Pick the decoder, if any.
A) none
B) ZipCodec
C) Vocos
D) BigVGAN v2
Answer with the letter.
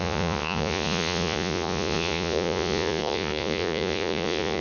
C